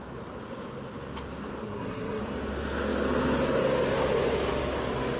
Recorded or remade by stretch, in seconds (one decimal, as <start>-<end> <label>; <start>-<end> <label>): 0.0-1.6 recorded; 1.6-2.2 remade; 2.2-5.2 recorded